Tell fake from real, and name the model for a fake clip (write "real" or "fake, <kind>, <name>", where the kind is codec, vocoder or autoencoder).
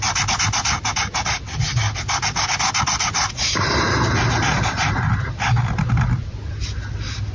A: real